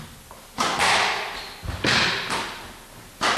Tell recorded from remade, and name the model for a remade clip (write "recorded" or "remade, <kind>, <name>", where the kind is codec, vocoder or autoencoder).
recorded